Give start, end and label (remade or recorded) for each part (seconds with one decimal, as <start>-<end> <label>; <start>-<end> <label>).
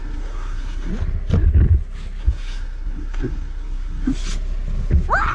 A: 0.0-0.9 remade; 0.9-2.2 recorded; 2.2-4.1 remade; 4.1-5.3 recorded